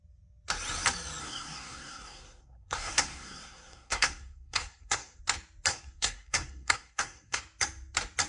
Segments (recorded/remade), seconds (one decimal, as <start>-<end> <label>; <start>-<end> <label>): 0.0-1.2 recorded; 1.2-5.2 remade; 5.2-5.7 recorded; 5.7-7.4 remade; 7.4-8.3 recorded